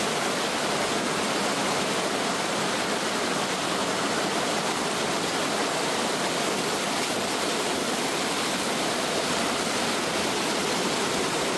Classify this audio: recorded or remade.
recorded